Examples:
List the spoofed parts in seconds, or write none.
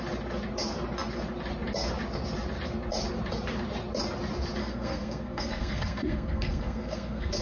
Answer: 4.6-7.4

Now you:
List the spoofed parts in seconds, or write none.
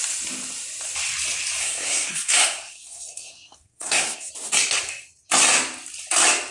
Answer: 1.6-4.3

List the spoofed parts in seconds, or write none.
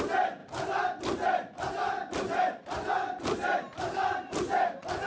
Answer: none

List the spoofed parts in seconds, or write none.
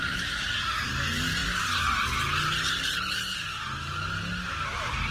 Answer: none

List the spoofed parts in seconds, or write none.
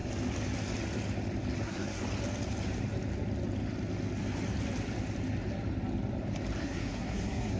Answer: 1.6-2.0; 6.6-7.6